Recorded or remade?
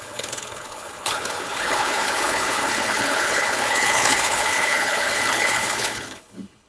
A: remade